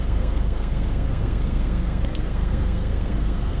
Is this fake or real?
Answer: fake